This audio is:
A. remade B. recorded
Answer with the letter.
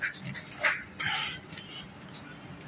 B